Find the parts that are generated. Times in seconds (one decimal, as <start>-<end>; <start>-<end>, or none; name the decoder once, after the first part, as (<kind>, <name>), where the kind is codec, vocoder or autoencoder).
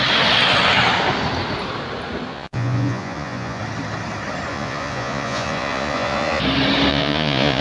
2.3-3.6 (vocoder, Vocos); 4.5-6.4; 6.9-7.6